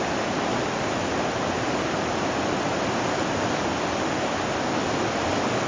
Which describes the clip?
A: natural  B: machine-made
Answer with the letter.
A